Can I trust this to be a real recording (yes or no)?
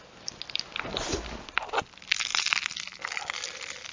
yes